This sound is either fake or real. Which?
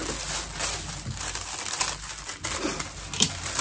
real